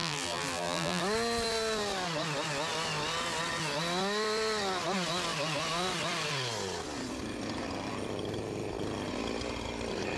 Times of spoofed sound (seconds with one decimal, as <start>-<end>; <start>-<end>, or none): 0.0-1.0